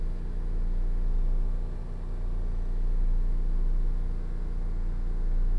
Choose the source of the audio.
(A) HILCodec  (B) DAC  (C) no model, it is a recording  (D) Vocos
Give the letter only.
C